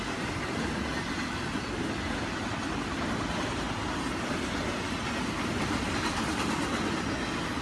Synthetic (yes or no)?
no